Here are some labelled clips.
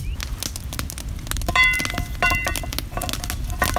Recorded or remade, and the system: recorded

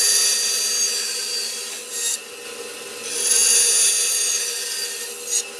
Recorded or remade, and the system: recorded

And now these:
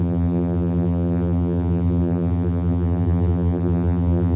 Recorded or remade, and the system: remade, vocoder, BigVGAN v2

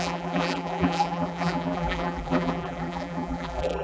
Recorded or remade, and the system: remade, vocoder, BigVGAN v2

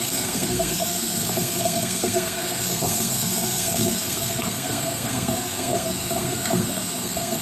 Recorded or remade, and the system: remade, codec, SNAC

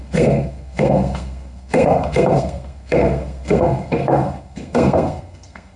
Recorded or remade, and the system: remade, codec, SNAC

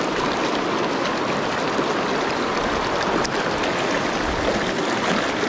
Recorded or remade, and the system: recorded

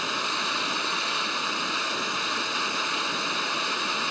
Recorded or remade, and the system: recorded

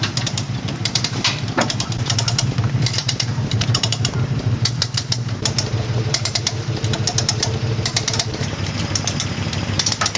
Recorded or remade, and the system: remade, vocoder, BigVGAN v2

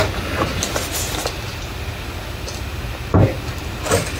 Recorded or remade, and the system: recorded